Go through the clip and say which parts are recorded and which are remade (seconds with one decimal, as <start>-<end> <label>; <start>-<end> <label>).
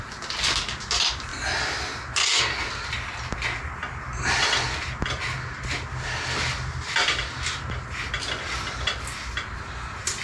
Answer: 0.0-10.2 recorded